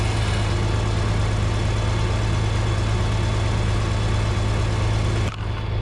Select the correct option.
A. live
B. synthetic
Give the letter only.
A